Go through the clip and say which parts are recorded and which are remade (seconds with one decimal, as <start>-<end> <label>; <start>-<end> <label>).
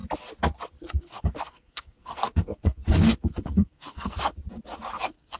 0.0-0.8 recorded; 0.8-4.3 remade; 4.3-5.0 recorded; 5.0-5.4 remade